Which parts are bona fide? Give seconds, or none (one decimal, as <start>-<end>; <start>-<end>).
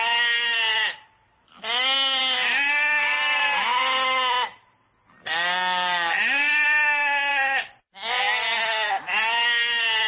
0.0-0.7; 1.3-7.3; 7.9-10.1